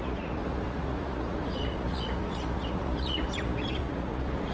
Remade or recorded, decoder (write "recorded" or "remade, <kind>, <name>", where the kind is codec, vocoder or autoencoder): remade, vocoder, Vocos